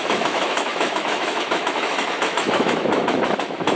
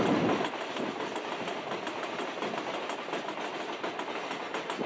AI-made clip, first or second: first